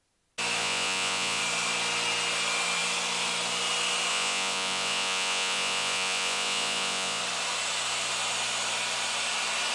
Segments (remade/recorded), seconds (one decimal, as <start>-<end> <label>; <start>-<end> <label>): 0.0-0.6 recorded; 0.6-1.4 remade; 1.4-4.1 recorded; 4.1-7.2 remade; 7.2-9.7 recorded